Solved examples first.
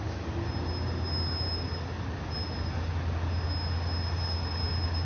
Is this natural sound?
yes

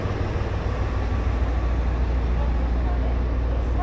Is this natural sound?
yes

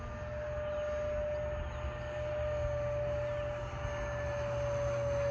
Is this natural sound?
yes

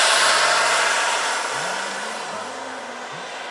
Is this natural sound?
yes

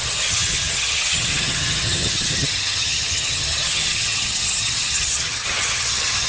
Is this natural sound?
no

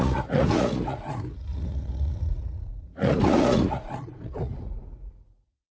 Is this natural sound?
no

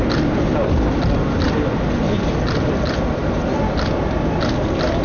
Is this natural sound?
yes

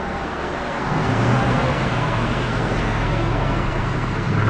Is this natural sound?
no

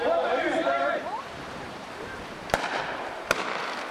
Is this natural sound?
no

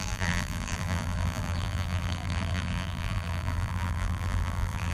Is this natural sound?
no